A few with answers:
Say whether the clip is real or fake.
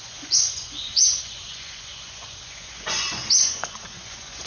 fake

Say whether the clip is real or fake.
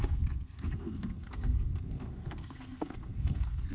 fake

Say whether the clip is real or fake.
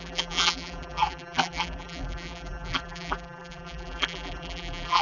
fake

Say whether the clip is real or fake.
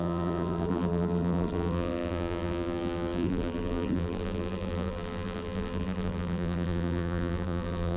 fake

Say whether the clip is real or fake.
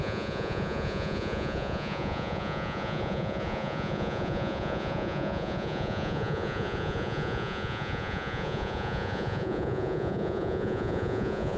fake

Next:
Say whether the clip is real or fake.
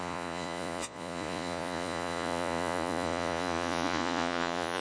fake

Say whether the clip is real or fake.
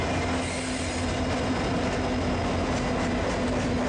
real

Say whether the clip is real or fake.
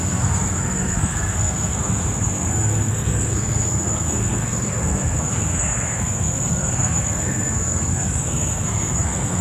fake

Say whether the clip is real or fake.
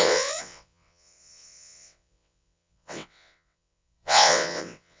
fake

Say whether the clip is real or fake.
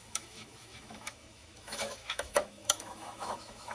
fake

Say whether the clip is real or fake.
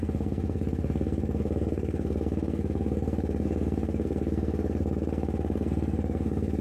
fake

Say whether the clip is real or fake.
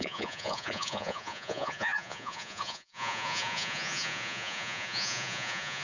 fake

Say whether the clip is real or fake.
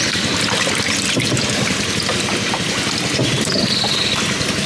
real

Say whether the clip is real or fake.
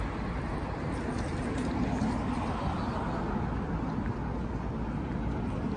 real